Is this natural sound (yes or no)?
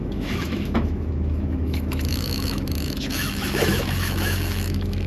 no